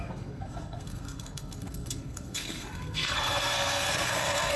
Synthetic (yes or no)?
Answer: yes